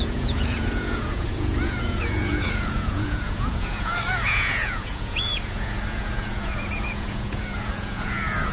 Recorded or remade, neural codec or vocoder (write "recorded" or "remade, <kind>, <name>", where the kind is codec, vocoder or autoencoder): remade, vocoder, Vocos